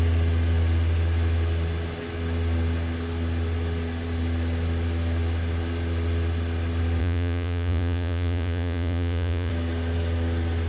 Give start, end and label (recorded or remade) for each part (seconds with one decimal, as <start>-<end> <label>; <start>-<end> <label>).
0.0-7.0 recorded; 7.0-9.5 remade; 9.5-10.7 recorded